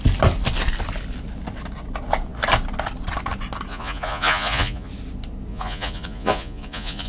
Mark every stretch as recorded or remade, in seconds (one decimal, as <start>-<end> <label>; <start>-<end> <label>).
0.0-3.7 recorded; 3.7-4.9 remade; 4.9-5.5 recorded; 5.5-7.1 remade